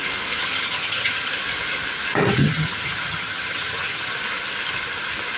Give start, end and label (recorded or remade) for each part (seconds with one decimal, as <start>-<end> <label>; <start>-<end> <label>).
0.0-0.4 recorded; 0.4-1.3 remade; 1.3-2.4 recorded; 2.4-4.1 remade; 4.1-5.4 recorded